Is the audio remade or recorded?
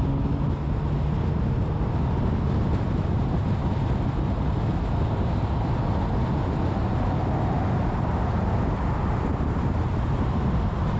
recorded